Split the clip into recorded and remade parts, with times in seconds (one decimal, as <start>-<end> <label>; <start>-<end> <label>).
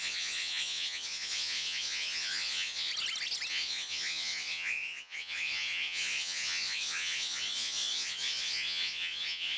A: 0.0-2.9 remade; 2.9-3.5 recorded; 3.5-9.6 remade